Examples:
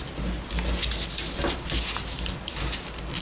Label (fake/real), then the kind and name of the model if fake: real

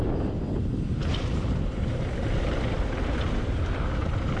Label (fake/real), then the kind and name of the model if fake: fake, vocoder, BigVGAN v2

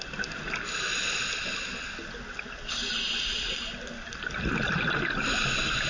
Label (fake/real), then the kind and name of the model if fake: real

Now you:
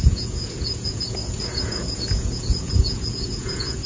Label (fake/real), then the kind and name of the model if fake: fake, vocoder, Vocos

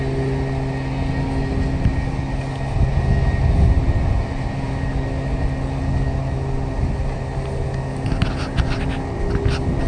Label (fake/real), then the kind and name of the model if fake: real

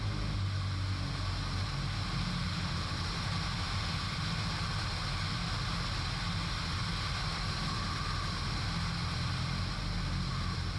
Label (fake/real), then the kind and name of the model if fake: real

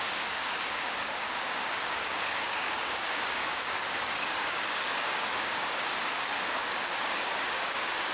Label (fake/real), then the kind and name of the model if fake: fake, codec, DAC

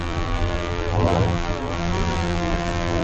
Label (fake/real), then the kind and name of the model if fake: fake, vocoder, BigVGAN v2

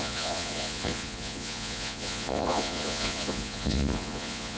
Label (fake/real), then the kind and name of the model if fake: fake, vocoder, Vocos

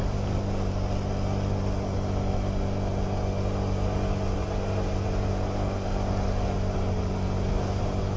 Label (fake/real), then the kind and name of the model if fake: real